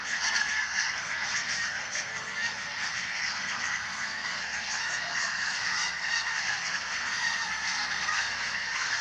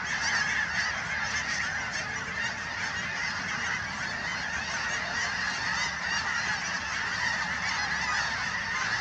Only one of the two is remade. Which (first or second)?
first